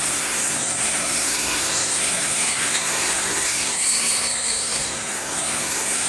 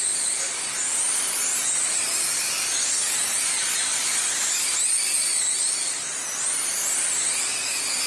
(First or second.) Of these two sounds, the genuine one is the second